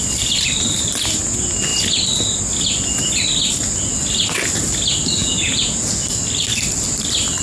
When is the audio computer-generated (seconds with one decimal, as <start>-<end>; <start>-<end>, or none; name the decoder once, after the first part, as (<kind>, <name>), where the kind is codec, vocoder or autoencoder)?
5.2-5.9 (vocoder, Vocos)